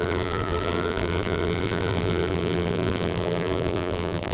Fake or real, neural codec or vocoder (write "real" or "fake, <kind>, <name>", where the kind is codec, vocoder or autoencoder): fake, vocoder, BigVGAN v2